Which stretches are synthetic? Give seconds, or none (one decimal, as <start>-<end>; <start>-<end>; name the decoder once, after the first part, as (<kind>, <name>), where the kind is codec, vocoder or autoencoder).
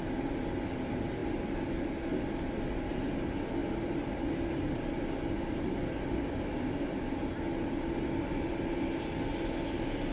none